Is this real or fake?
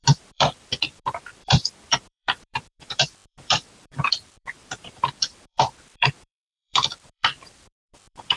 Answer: fake